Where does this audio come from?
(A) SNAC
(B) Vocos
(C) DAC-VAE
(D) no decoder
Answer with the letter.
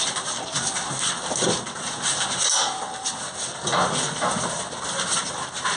D